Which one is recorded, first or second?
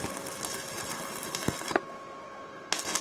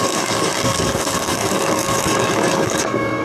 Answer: first